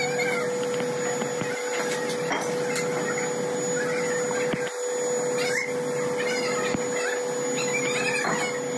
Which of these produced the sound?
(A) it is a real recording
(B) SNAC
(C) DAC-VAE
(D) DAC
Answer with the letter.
A